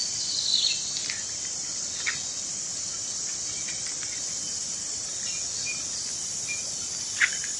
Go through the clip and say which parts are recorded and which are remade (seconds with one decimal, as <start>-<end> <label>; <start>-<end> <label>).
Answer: 0.0-7.6 recorded

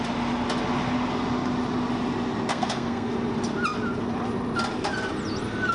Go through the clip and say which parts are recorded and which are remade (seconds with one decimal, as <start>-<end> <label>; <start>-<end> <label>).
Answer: 0.0-2.5 recorded; 2.5-3.1 remade; 3.1-5.7 recorded

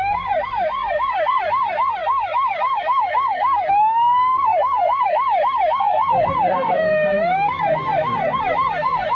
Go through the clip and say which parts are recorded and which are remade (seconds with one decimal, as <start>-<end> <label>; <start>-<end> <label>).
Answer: 0.0-9.1 remade

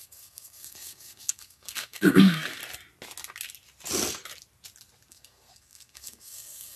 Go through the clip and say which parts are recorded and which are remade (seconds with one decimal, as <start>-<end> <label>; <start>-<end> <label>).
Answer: 0.0-2.6 remade; 2.6-5.1 recorded; 5.1-6.8 remade

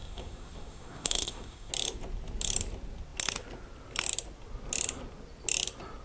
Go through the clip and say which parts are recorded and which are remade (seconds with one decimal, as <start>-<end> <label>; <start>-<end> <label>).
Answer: 0.0-1.7 remade; 1.7-6.0 recorded